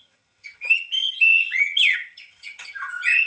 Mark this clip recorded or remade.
remade